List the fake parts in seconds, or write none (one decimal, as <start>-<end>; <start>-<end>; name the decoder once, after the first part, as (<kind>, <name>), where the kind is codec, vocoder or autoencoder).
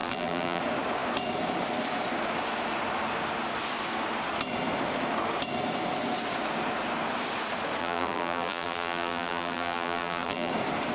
0.0-0.6 (vocoder, BigVGAN v2); 7.8-10.5